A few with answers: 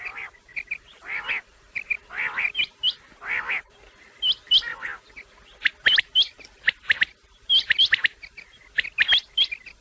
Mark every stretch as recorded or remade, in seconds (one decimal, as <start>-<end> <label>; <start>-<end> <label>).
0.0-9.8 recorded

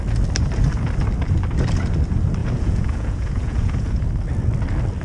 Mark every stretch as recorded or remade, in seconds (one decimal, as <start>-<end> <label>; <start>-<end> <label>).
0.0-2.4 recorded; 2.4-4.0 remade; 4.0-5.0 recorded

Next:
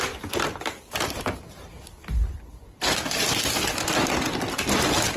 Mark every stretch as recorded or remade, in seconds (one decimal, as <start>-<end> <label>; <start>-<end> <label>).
0.0-5.2 recorded

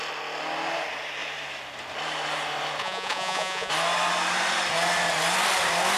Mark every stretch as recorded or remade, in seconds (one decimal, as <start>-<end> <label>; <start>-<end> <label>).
0.0-2.8 recorded; 2.8-3.7 remade; 3.7-6.0 recorded